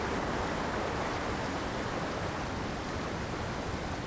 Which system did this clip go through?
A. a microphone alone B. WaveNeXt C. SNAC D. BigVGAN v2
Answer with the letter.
A